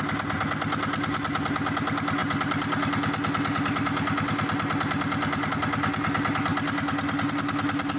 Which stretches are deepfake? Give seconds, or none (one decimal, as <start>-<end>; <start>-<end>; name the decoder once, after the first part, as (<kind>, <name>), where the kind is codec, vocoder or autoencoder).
none